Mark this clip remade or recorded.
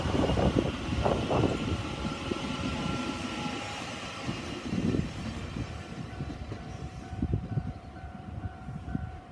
remade